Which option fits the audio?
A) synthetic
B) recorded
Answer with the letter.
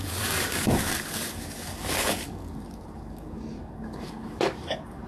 A